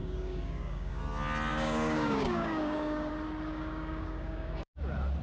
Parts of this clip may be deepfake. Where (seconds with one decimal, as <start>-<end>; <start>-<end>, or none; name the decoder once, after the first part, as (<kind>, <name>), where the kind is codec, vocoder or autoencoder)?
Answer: 0.0-1.0 (codec, DAC); 1.5-3.1; 3.5-4.8